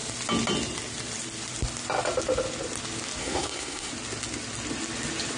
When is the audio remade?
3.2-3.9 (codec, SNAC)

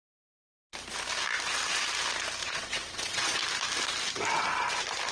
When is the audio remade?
2.4-3.4 (vocoder, Vocos)